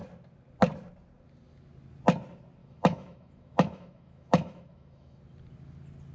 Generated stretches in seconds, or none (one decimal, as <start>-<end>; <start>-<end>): 2.6-5.2